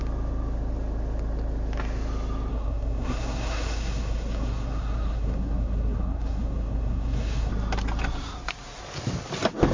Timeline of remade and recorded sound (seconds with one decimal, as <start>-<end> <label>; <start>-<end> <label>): 0.0-2.5 recorded; 2.5-7.5 remade; 7.5-9.7 recorded